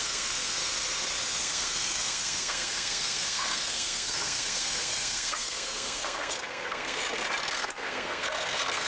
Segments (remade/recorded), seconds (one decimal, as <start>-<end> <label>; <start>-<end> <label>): 0.0-0.6 remade; 0.6-1.3 recorded; 1.3-7.0 remade; 7.0-7.5 recorded; 7.5-8.9 remade

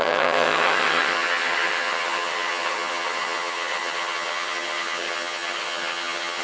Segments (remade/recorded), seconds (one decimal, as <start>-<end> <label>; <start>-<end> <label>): 0.0-6.4 remade

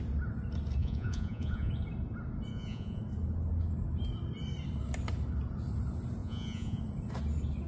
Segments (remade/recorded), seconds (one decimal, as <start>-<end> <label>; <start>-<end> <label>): 0.0-0.8 recorded; 0.8-1.7 remade; 1.7-2.5 recorded; 2.5-3.0 remade; 3.0-6.2 recorded; 6.2-6.8 remade; 6.8-7.7 recorded

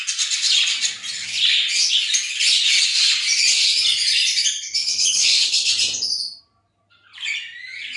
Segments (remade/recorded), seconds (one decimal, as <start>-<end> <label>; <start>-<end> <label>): 0.0-4.8 recorded; 4.8-5.7 remade; 5.7-8.0 recorded